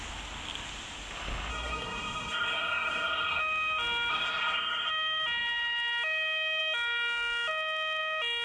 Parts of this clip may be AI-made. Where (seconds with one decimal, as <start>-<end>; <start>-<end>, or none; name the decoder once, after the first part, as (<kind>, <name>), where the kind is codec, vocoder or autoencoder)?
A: 1.5-3.4 (codec, SNAC); 4.1-4.9